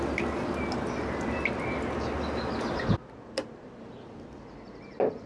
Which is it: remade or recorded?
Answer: recorded